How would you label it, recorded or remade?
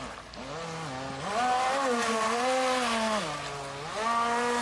recorded